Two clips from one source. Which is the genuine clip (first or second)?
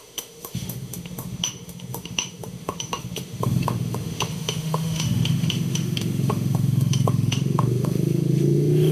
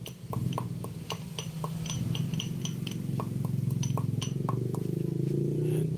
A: second